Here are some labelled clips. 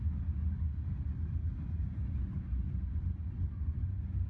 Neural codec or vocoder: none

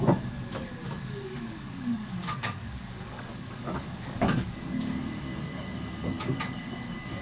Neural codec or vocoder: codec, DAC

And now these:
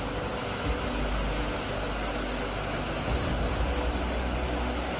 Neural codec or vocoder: none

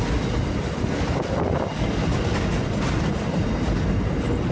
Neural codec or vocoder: none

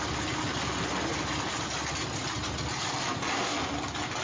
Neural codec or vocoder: none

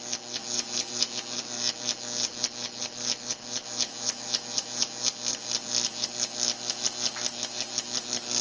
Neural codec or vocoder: none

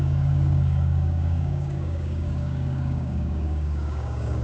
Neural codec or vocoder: codec, DAC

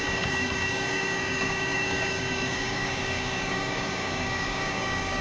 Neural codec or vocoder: codec, DAC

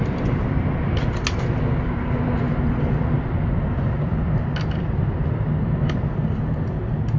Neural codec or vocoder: none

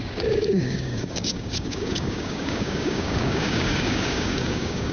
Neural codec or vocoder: codec, DAC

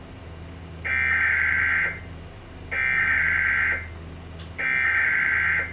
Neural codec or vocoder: none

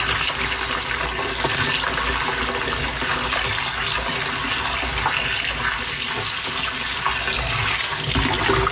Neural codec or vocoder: none